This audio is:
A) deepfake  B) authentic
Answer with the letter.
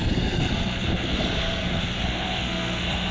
A